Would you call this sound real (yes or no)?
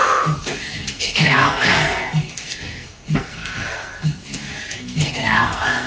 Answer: no